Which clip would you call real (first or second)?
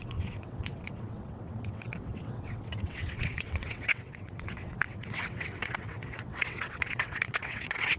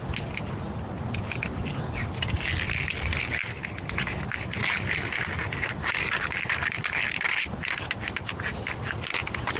second